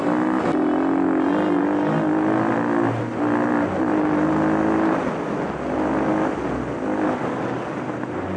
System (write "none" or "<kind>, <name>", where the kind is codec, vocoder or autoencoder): none